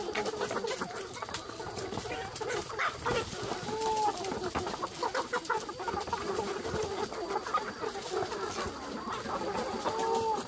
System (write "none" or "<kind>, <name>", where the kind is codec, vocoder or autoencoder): none